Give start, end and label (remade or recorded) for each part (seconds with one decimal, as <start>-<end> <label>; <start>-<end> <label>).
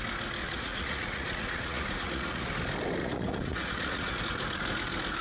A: 0.0-0.4 recorded; 0.4-2.5 remade; 2.5-3.0 recorded; 3.0-4.2 remade; 4.2-5.2 recorded